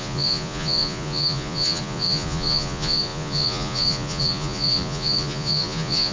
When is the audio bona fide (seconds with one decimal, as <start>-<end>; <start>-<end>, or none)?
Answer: none